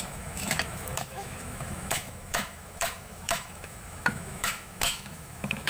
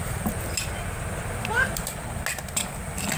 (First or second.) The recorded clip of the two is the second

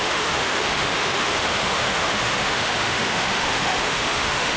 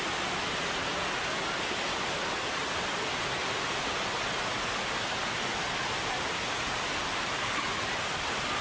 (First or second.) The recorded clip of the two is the second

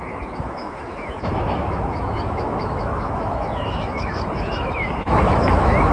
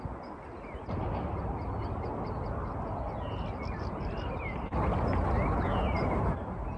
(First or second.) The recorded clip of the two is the second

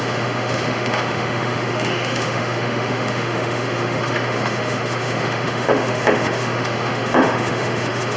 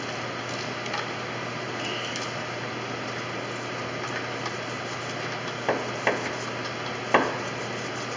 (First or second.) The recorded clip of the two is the second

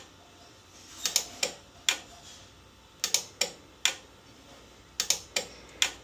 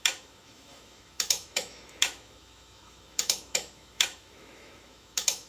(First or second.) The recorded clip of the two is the first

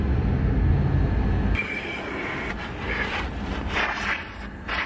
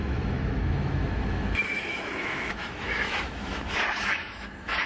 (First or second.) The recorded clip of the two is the first